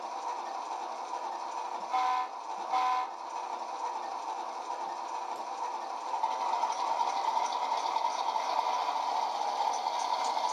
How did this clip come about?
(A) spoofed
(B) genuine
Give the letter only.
B